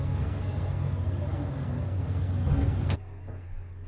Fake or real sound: fake